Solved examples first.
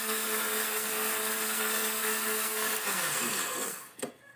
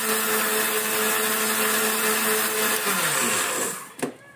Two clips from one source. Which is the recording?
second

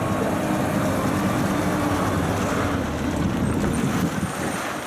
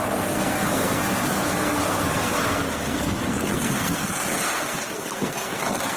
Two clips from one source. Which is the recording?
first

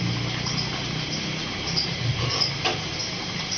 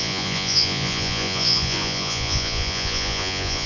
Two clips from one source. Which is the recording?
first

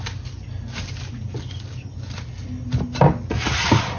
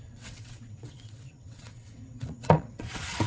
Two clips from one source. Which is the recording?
first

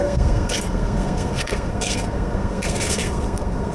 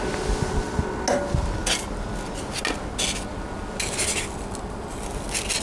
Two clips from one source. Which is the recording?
second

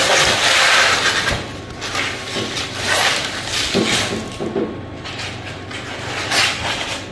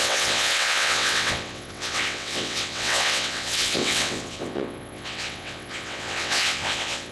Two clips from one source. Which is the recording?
first